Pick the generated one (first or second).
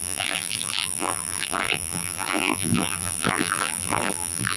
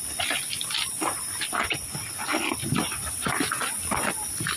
first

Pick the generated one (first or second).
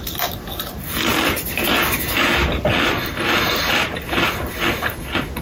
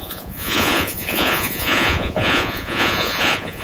second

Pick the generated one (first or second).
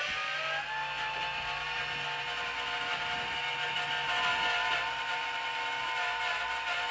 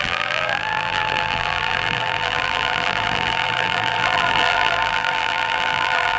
second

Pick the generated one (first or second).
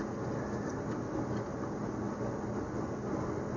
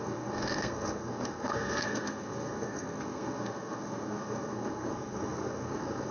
second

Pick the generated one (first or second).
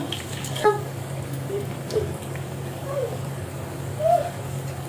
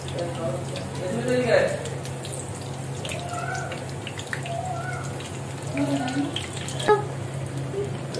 first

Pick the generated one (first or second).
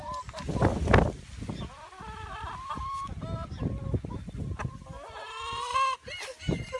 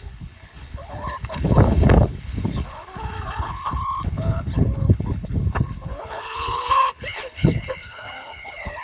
second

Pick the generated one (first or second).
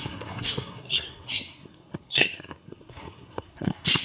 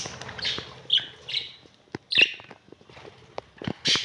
first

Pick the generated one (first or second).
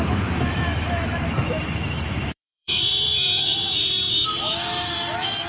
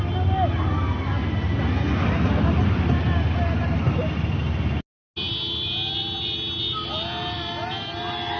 first